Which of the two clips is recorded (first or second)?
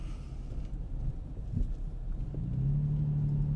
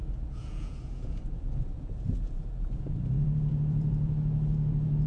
first